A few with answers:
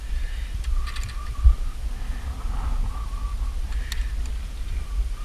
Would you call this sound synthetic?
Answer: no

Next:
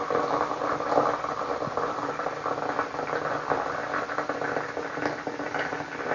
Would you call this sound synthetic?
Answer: no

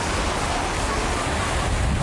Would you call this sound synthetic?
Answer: no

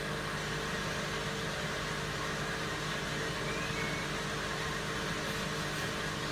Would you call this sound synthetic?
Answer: no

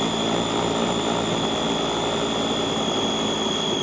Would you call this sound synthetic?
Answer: no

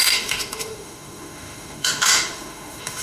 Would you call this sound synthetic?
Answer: yes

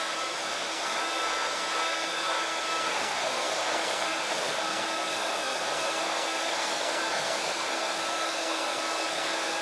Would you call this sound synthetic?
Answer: yes